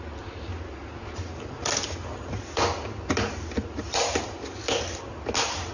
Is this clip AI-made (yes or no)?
no